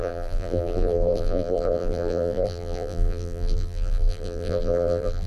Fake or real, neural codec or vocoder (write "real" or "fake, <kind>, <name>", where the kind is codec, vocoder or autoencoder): fake, vocoder, BigVGAN v2